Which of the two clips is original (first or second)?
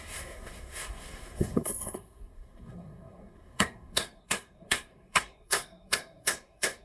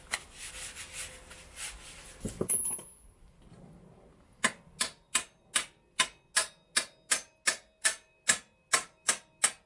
second